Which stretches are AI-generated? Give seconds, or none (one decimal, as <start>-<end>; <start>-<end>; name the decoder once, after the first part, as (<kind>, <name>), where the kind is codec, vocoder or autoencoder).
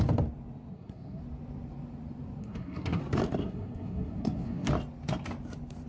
0.7-1.2 (codec, SNAC); 2.4-3.0; 3.4-4.7